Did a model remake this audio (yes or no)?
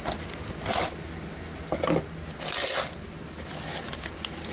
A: no